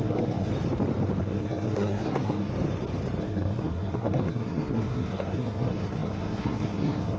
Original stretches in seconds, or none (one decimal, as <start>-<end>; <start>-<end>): 0.5-1.2; 2.5-3.2